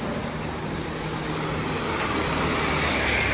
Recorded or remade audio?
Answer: recorded